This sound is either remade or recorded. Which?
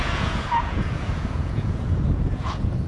remade